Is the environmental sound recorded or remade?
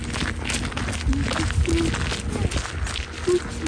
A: recorded